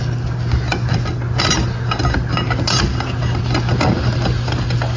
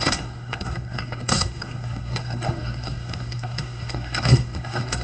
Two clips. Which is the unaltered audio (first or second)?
first